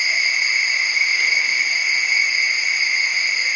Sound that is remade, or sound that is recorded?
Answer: recorded